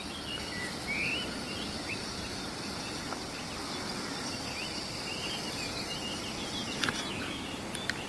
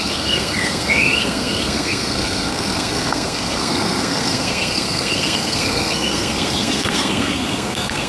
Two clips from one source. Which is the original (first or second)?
first